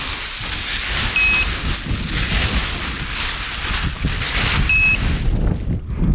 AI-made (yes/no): no